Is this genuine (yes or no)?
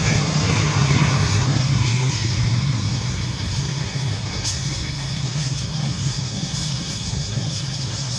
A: no